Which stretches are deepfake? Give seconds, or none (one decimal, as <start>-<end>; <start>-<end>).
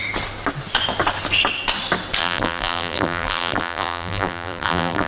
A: 2.2-5.1